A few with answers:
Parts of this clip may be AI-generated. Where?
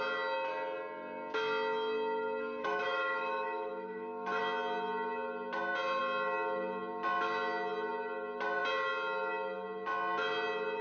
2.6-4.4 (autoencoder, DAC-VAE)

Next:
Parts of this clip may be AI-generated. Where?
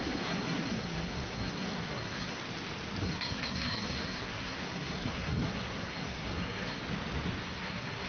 0.0-2.4 (codec, SNAC); 3.0-6.8; 7.4-8.1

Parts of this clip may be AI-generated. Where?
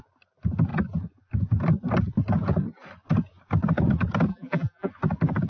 4.3-4.9 (vocoder, BigVGAN v2)